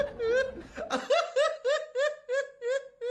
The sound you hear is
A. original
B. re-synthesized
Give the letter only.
A